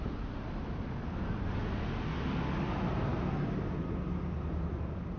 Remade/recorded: recorded